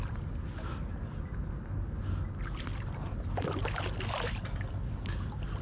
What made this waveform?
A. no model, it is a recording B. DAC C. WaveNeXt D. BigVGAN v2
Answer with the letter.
A